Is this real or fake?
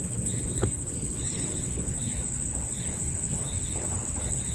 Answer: fake